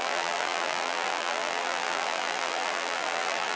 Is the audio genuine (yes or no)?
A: no